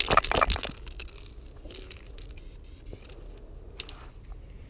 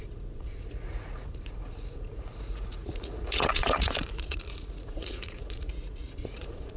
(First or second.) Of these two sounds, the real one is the first